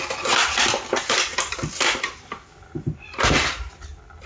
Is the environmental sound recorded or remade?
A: recorded